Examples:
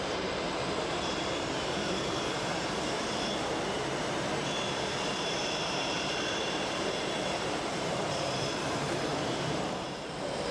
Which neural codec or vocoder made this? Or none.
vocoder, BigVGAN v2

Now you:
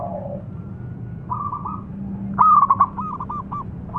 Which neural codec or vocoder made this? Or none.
none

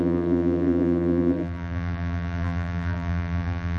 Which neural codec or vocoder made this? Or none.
vocoder, BigVGAN v2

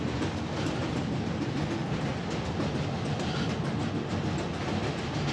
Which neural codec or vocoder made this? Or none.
none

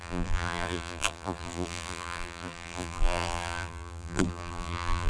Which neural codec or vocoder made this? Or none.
vocoder, BigVGAN v2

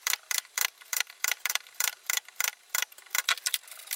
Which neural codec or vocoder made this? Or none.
vocoder, BigVGAN v2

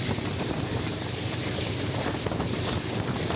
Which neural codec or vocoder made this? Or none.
vocoder, BigVGAN v2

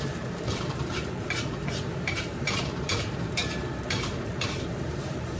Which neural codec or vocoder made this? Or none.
vocoder, BigVGAN v2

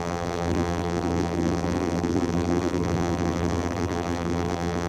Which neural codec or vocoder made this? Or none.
vocoder, BigVGAN v2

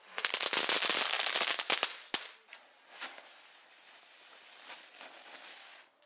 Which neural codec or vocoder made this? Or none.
none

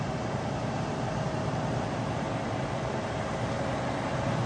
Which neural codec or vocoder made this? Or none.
vocoder, BigVGAN v2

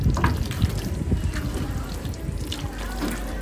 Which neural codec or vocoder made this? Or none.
none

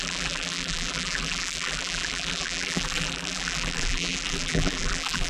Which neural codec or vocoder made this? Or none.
vocoder, BigVGAN v2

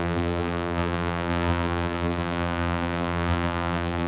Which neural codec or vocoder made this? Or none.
vocoder, BigVGAN v2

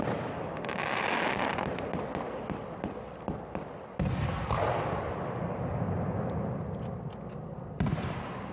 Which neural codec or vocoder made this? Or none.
none